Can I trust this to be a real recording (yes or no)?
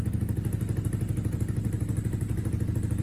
yes